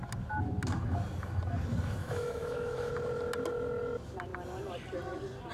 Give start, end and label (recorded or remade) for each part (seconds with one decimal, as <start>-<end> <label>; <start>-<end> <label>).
0.0-2.0 recorded; 2.0-2.9 remade; 2.9-5.5 recorded

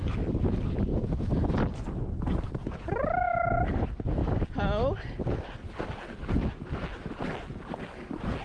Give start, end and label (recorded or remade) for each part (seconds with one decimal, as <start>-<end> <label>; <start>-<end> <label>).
0.0-8.4 recorded

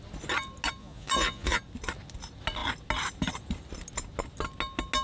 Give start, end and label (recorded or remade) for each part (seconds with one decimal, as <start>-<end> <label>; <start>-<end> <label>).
0.0-0.8 recorded; 0.8-1.6 remade; 1.6-5.0 recorded